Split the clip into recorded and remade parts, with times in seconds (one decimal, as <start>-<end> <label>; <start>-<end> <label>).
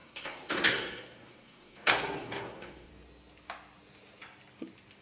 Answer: 0.0-2.9 remade; 2.9-5.0 recorded